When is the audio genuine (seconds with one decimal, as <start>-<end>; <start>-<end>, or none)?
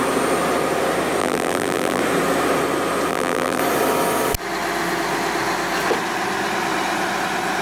0.0-1.2; 2.0-3.1; 3.6-7.6